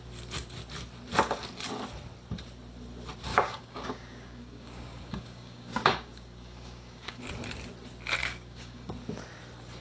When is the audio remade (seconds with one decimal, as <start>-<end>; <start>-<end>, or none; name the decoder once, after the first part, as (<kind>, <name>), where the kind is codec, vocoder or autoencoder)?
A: 3.3-7.2 (codec, DAC); 8.2-8.9